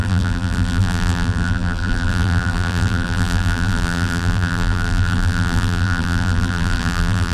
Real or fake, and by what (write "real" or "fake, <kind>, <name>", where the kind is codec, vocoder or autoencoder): fake, vocoder, BigVGAN v2